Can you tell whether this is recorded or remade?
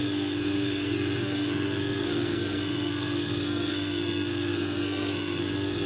remade